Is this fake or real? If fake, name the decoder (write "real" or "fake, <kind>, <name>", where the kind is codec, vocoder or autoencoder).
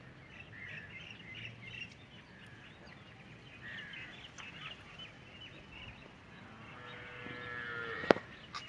real